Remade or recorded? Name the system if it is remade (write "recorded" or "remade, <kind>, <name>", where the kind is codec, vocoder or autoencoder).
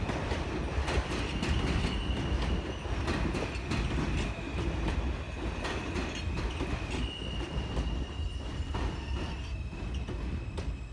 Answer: recorded